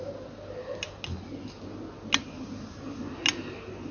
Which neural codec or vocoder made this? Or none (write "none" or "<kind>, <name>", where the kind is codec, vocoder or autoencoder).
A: none